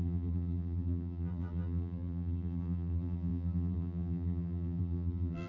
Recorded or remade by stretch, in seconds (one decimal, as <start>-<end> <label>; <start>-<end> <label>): 0.0-5.5 remade